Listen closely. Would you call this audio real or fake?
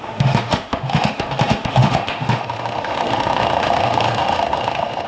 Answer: fake